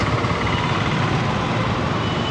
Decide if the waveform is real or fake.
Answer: fake